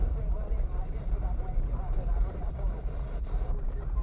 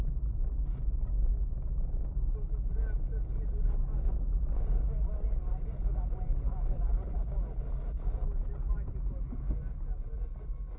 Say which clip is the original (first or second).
second